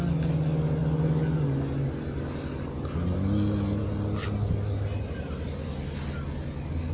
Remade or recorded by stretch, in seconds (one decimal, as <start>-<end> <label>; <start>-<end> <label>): 0.0-6.9 recorded